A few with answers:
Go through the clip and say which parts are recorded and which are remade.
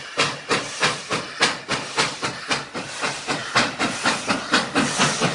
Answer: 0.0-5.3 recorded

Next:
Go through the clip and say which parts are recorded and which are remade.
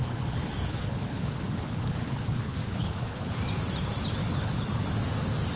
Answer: 0.0-3.4 remade; 3.4-4.2 recorded; 4.2-4.8 remade; 4.8-5.6 recorded